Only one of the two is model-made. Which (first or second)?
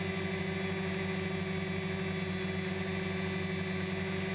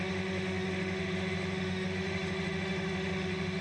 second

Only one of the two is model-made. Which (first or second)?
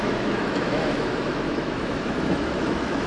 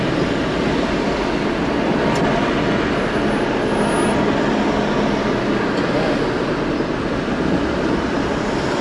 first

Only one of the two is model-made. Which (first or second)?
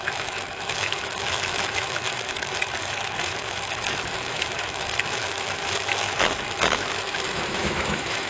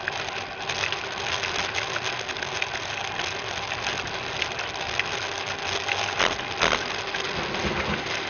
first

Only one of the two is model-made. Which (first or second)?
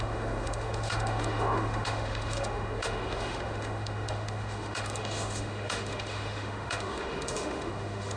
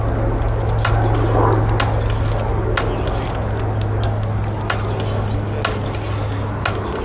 first